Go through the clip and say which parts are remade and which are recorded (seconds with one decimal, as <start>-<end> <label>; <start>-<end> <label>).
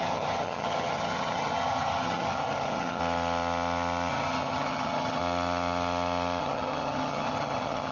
0.0-3.0 remade; 3.0-4.1 recorded; 4.1-5.2 remade; 5.2-6.4 recorded; 6.4-7.9 remade